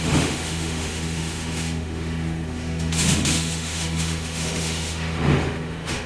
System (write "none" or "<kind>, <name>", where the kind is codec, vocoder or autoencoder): autoencoder, DAC-VAE